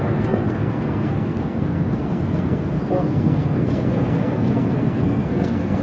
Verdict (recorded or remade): remade